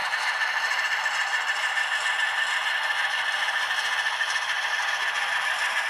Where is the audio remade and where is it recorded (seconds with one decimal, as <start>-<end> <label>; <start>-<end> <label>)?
0.0-1.0 remade; 1.0-1.6 recorded; 1.6-2.1 remade; 2.1-5.9 recorded